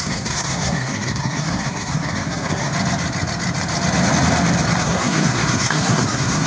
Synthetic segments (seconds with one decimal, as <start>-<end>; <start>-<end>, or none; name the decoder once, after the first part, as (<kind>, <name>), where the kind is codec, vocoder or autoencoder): 0.0-2.7 (codec, SNAC); 4.8-6.5